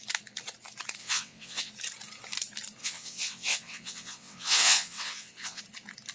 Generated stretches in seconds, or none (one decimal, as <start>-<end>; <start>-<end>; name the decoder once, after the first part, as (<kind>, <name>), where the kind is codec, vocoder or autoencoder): 1.0-1.7 (vocoder, WaveNeXt); 2.8-5.6